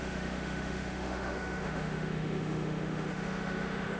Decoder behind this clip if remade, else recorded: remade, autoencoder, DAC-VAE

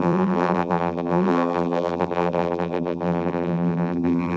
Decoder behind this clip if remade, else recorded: remade, vocoder, BigVGAN v2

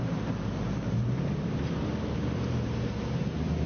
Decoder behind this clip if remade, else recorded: remade, vocoder, BigVGAN v2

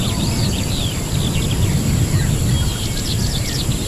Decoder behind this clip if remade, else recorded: recorded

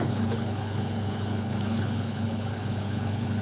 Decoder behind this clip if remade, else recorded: remade, codec, HILCodec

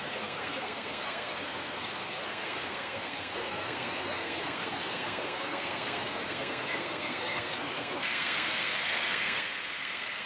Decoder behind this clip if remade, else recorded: remade, codec, SNAC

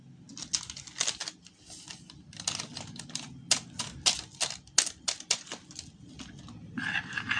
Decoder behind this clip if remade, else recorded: recorded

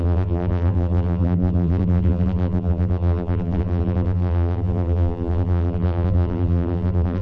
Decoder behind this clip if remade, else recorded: remade, vocoder, BigVGAN v2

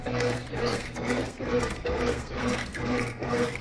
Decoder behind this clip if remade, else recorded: remade, codec, SNAC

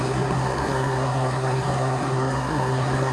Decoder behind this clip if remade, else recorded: remade, codec, SNAC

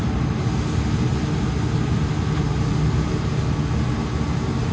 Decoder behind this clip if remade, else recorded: remade, vocoder, BigVGAN v2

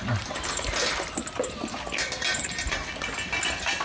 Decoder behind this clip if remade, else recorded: recorded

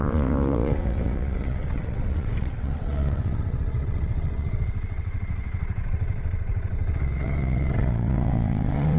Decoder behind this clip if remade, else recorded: remade, vocoder, WaveNeXt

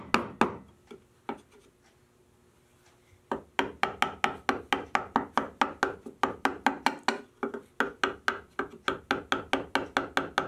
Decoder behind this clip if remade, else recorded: recorded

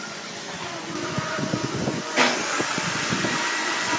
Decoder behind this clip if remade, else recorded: remade, vocoder, Vocos